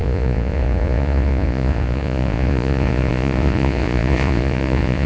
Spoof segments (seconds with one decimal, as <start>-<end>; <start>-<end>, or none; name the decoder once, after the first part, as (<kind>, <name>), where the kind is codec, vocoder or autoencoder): 0.0-5.1 (vocoder, Vocos)